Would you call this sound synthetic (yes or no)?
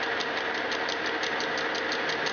no